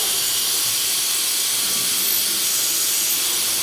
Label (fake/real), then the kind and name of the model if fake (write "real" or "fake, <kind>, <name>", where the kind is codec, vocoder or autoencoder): real